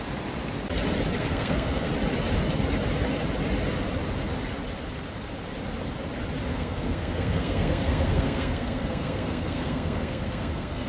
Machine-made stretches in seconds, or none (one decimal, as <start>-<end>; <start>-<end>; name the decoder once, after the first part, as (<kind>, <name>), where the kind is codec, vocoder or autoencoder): 1.2-1.9 (codec, SNAC); 6.5-10.9